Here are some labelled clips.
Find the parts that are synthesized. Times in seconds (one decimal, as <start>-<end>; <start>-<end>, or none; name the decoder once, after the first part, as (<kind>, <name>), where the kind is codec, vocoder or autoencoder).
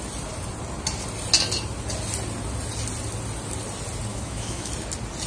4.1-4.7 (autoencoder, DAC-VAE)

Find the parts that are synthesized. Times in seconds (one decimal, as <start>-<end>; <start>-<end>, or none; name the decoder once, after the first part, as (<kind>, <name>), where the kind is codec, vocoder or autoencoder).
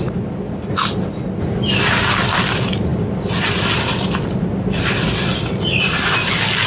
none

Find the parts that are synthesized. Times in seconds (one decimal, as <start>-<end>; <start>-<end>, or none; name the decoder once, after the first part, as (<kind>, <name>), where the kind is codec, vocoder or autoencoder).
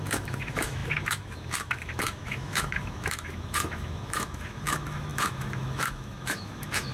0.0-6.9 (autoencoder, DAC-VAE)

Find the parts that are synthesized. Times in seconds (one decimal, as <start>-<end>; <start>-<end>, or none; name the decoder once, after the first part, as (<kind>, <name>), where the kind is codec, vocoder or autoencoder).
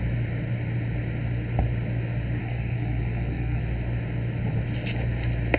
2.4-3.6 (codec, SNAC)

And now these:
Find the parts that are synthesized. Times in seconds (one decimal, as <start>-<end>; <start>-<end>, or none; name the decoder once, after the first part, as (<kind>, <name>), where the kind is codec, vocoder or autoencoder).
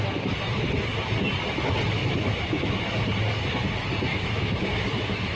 2.0-2.8 (autoencoder, DAC-VAE); 4.1-5.4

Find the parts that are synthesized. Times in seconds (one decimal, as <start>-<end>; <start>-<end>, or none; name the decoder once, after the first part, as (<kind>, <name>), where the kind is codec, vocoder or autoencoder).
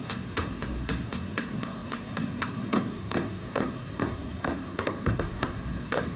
0.0-6.2 (codec, SNAC)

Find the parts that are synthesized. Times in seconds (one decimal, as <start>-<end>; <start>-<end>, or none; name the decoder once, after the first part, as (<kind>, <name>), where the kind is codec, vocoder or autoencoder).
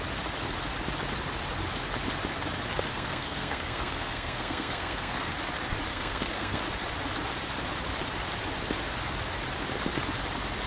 2.9-5.3 (codec, SNAC); 5.9-6.6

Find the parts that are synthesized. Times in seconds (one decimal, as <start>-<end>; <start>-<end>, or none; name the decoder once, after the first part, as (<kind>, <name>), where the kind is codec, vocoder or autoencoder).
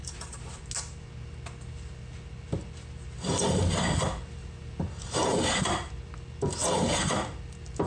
0.0-0.6 (vocoder, BigVGAN v2); 4.4-5.9; 6.6-7.3